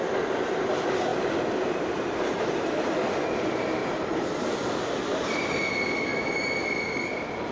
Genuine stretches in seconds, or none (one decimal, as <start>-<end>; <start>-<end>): 0.0-1.1; 2.5-3.8; 4.6-5.1; 5.6-7.5